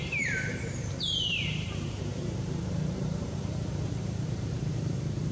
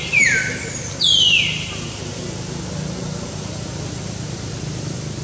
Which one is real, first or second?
second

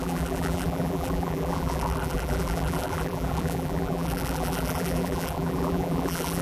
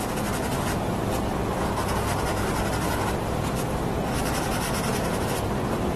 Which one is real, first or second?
second